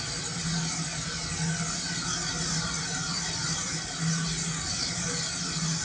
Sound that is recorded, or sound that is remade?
recorded